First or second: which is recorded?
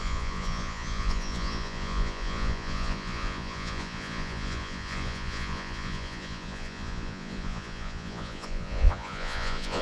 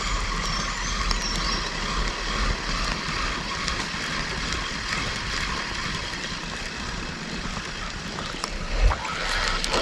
second